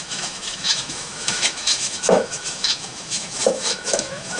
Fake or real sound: fake